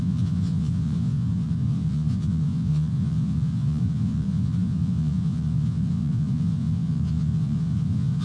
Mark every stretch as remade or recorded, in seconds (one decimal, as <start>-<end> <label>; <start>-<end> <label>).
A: 0.0-8.2 remade